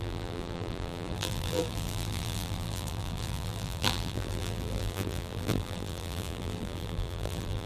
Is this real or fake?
fake